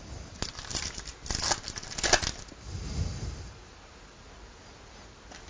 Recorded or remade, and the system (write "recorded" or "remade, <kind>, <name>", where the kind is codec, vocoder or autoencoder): recorded